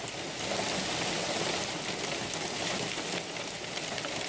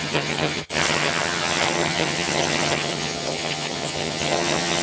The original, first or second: first